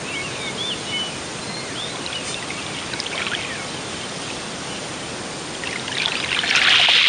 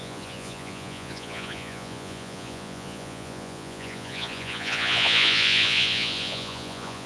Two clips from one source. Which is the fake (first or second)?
second